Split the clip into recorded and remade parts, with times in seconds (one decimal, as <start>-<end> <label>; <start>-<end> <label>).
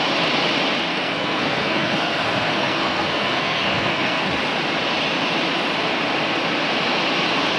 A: 0.0-0.9 recorded; 0.9-4.3 remade; 4.3-7.6 recorded